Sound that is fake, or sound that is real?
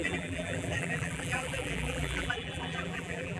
fake